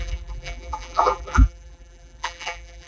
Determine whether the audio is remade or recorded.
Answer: remade